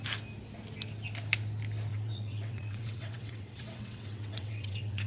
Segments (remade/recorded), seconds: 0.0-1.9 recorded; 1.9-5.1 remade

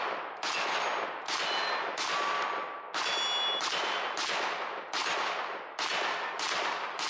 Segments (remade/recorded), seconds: 0.0-7.1 recorded

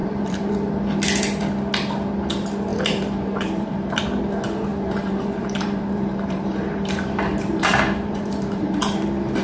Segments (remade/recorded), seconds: 0.0-0.5 remade; 0.5-2.7 recorded; 2.7-4.0 remade; 4.0-4.7 recorded; 4.7-9.4 remade

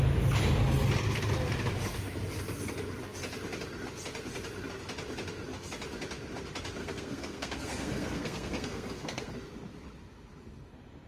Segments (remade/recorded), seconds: 0.0-6.8 recorded; 6.8-9.3 remade; 9.3-11.1 recorded

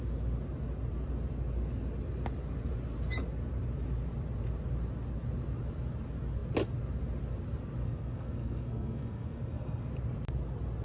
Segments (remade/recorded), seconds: 0.0-7.8 recorded; 7.8-9.9 remade; 9.9-10.8 recorded

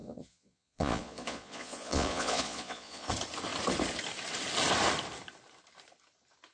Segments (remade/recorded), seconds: 0.0-3.1 remade; 3.1-6.5 recorded

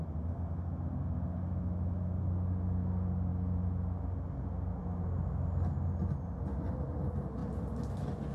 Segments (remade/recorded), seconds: 0.0-8.3 recorded